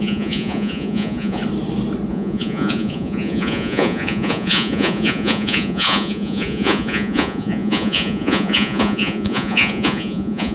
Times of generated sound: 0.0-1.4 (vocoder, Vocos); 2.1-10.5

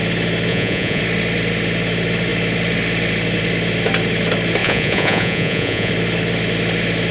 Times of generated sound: 0.5-1.0 (vocoder, Vocos); 4.6-5.9

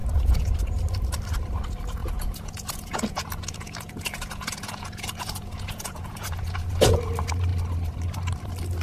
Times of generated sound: 0.0-0.5 (vocoder, Vocos); 2.0-7.0

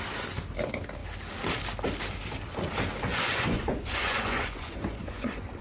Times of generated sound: 3.1-5.6 (vocoder, Vocos)